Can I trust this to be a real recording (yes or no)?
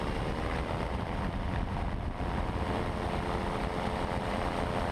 no